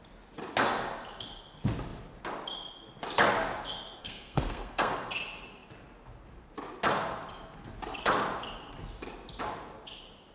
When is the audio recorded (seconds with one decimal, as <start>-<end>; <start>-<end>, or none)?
0.0-4.0; 4.9-10.3